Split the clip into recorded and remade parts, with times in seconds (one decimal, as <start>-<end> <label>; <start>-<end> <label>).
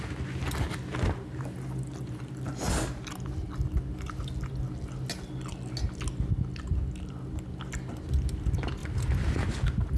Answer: 0.0-8.8 recorded; 8.8-9.4 remade; 9.4-10.0 recorded